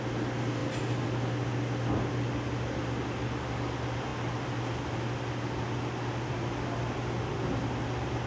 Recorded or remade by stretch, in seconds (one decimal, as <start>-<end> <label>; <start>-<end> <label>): 0.0-8.3 recorded

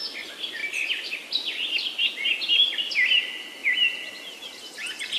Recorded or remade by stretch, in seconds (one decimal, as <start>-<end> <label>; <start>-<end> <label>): 0.0-5.2 recorded

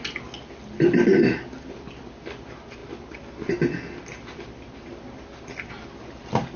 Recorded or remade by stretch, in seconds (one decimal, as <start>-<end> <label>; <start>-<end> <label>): 0.0-6.6 recorded

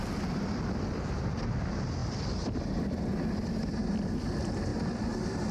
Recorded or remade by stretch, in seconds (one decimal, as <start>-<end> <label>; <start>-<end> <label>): 0.0-4.7 recorded; 4.7-5.5 remade